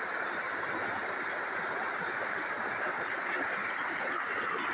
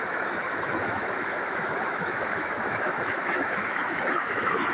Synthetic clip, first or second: second